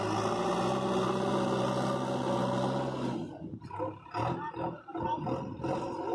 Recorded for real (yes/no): yes